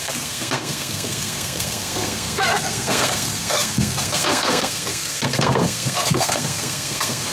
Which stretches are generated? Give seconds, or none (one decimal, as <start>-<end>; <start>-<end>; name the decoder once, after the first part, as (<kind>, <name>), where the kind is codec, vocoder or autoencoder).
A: 0.0-7.3 (codec, SNAC)